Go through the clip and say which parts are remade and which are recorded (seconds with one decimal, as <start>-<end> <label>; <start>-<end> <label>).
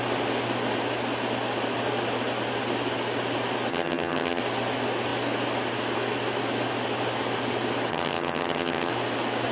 0.0-3.7 recorded; 3.7-4.4 remade; 4.4-7.9 recorded; 7.9-8.9 remade; 8.9-9.5 recorded